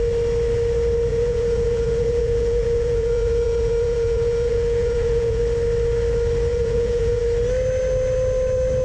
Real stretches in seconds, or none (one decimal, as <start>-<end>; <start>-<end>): 0.0-1.1; 5.4-6.5; 7.2-8.8